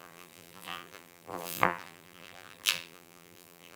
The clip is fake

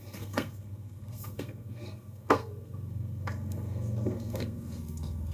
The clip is fake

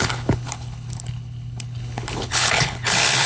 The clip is fake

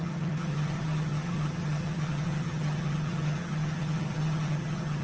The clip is fake